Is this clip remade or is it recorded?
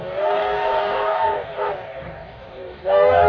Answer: remade